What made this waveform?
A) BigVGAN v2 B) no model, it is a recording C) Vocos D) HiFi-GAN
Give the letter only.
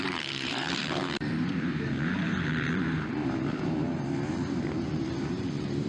A